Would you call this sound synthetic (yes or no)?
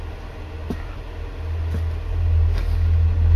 no